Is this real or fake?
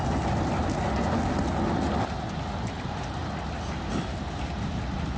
real